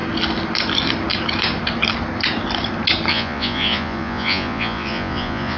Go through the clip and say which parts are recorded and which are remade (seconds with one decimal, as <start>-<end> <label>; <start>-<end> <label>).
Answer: 0.0-3.1 recorded; 3.1-5.6 remade